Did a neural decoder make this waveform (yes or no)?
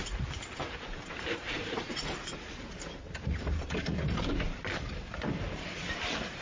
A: yes